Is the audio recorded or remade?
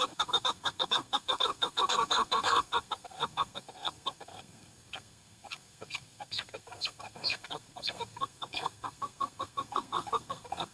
remade